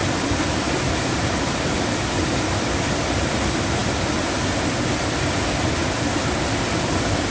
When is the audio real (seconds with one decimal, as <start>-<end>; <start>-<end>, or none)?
0.0-7.3